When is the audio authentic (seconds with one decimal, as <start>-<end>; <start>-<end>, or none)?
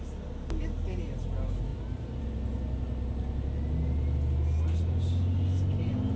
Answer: 0.0-6.2